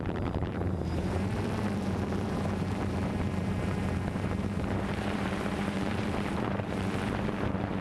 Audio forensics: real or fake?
fake